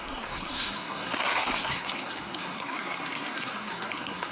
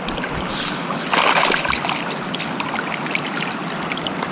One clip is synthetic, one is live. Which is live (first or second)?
second